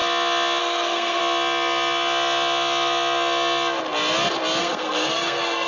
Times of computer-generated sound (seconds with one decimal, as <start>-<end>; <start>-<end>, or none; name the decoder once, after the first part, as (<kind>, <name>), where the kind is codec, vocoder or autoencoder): 0.6-1.2 (codec, SNAC); 4.6-5.7